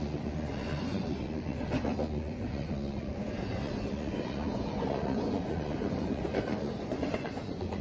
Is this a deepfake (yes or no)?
yes